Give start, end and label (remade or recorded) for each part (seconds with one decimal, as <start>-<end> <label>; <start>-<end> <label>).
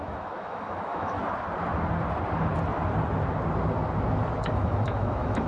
0.0-1.2 remade; 1.2-4.5 recorded; 4.5-5.5 remade